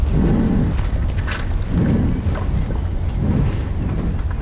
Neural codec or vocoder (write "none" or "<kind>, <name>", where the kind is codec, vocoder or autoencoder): none